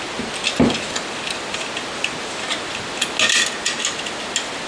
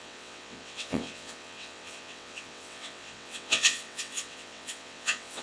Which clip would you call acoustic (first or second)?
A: first